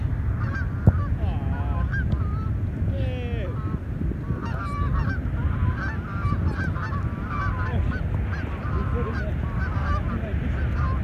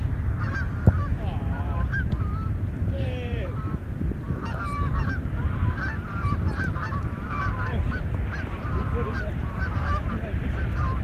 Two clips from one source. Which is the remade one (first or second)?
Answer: second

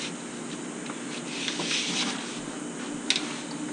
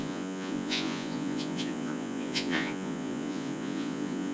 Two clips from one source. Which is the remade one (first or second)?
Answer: second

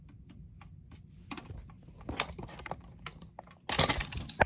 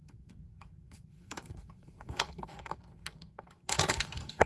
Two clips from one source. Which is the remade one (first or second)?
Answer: second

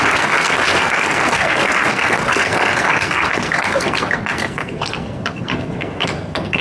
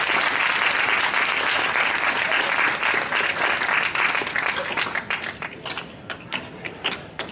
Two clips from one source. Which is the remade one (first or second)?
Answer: first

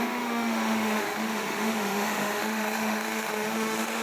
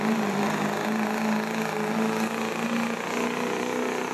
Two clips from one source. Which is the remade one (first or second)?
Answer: first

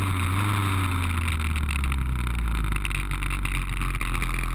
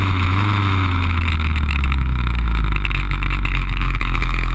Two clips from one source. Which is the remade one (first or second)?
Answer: second